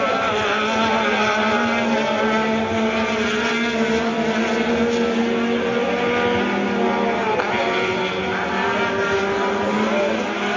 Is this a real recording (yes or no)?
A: yes